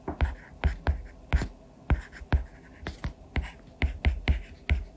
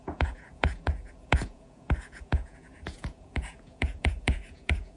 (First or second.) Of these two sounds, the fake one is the second